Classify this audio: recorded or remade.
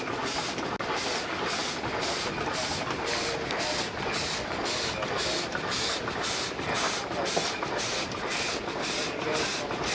recorded